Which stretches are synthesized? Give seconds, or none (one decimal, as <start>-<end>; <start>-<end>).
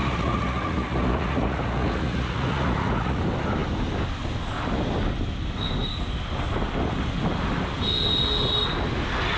0.0-3.2